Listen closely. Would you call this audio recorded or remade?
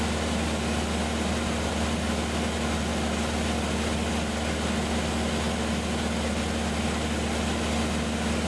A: recorded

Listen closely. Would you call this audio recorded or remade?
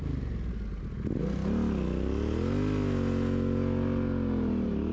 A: recorded